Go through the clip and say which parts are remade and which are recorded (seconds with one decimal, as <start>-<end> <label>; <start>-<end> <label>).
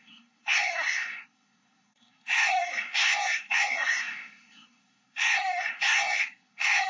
0.0-6.9 remade